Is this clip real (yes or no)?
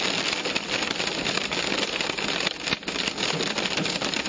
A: yes